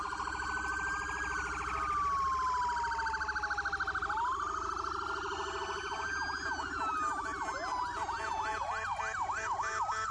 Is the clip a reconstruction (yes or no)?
no